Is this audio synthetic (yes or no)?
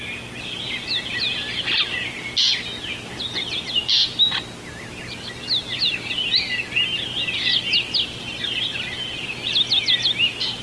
no